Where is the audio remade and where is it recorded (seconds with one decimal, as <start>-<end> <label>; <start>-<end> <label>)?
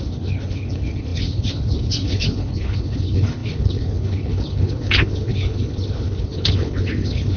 0.0-7.4 remade